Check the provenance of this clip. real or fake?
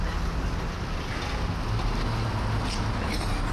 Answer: real